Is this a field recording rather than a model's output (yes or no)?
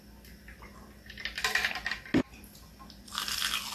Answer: yes